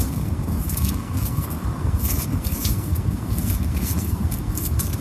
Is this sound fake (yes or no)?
yes